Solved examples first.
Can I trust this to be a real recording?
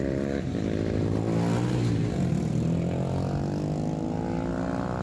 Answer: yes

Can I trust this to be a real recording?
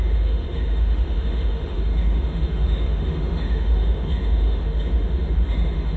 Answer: no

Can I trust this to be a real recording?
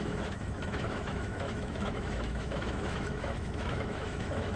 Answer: no